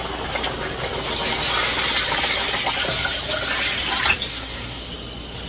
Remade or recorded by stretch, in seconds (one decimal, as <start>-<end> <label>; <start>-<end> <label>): 0.0-4.3 recorded; 4.3-4.8 remade; 4.8-5.5 recorded